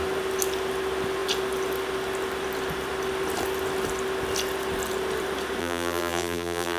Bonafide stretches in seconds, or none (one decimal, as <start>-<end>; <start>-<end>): 0.0-5.6